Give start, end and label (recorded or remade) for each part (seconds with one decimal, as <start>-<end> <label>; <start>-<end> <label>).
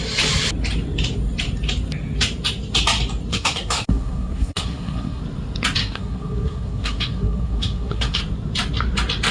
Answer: 0.0-3.3 recorded; 3.3-5.2 remade; 5.2-5.8 recorded; 5.8-8.2 remade; 8.2-9.3 recorded